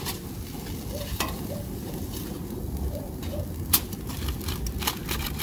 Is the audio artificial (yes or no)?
no